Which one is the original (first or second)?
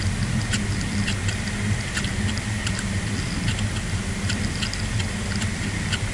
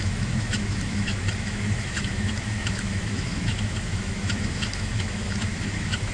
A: first